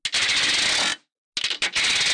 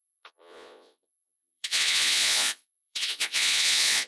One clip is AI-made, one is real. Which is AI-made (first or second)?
second